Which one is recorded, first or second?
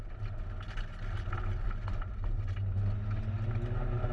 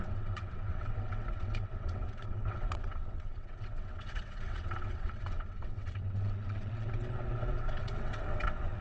first